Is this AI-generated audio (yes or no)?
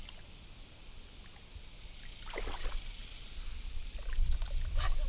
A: no